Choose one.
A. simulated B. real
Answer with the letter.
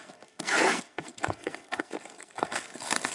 A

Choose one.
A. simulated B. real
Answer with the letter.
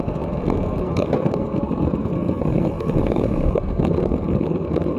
A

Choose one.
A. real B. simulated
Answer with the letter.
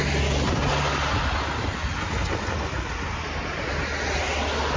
A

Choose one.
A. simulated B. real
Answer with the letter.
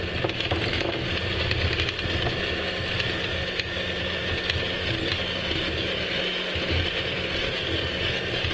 B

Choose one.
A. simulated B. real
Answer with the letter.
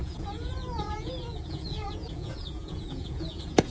A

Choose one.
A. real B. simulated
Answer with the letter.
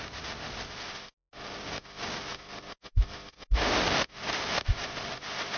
A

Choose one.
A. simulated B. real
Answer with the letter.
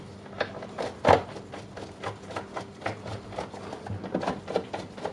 B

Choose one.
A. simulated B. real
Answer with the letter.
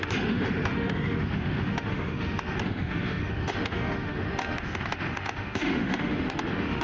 A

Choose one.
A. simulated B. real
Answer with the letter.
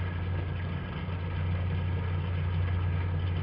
B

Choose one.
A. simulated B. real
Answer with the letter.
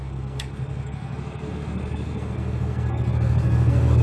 A